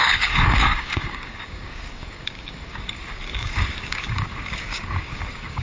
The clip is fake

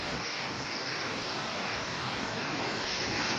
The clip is fake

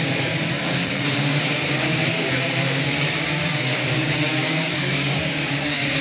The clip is fake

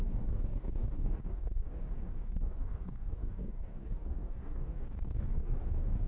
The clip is fake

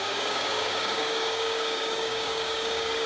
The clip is fake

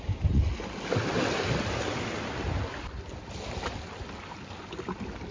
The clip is real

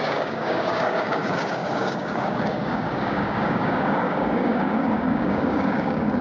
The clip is fake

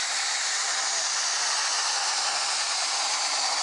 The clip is real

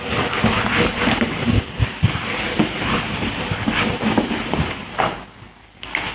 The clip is real